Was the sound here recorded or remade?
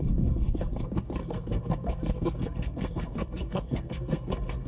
remade